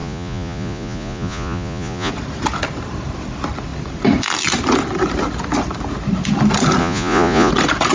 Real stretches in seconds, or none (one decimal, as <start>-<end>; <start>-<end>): 2.1-6.8; 7.5-7.9